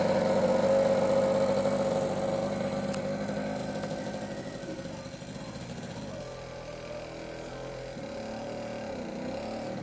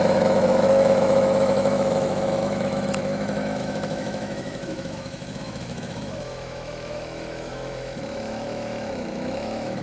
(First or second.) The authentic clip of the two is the first